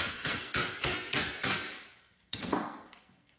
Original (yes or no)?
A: no